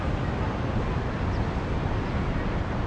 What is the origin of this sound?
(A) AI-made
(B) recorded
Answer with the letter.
B